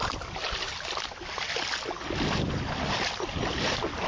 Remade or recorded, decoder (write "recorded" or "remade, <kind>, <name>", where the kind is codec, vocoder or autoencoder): recorded